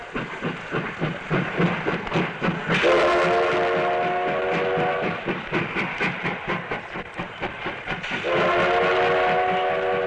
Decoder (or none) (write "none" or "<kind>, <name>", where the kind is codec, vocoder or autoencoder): none